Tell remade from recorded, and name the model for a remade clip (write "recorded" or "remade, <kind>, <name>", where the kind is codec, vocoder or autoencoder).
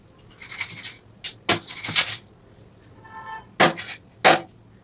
recorded